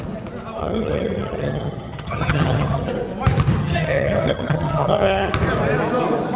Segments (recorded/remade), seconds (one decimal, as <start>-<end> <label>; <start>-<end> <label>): 0.0-0.6 recorded; 0.6-2.9 remade; 2.9-3.6 recorded; 3.6-5.3 remade; 5.3-6.4 recorded